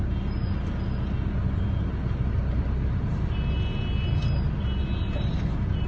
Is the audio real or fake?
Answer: real